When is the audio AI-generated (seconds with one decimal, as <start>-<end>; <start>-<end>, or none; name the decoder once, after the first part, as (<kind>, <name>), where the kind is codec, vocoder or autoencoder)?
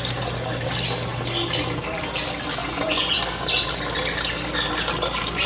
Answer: 2.6-3.2 (vocoder, Vocos)